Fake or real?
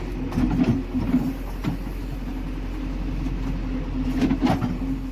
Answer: real